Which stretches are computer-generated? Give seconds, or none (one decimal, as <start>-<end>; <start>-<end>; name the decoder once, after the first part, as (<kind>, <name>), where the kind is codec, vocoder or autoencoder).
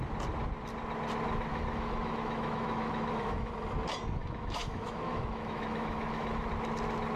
1.5-3.5 (autoencoder, DAC-VAE); 4.2-6.5